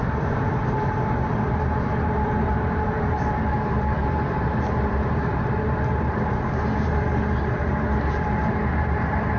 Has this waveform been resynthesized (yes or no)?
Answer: yes